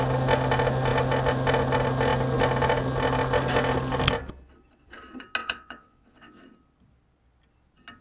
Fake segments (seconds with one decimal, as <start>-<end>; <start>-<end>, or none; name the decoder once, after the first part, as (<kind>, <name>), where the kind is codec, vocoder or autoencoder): 5.4-6.4 (vocoder, WaveNeXt)